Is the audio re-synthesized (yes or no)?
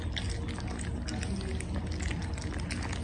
no